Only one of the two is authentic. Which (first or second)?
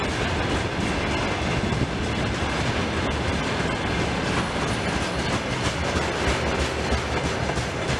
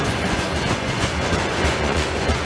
first